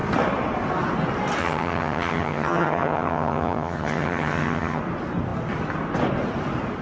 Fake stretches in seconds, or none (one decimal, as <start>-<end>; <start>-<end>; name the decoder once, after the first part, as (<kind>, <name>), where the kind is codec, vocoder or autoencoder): 1.4-4.8 (vocoder, HiFi-GAN)